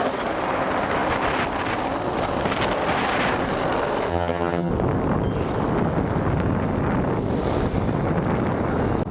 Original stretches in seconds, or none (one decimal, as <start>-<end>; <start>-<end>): 0.0-4.1; 4.7-9.1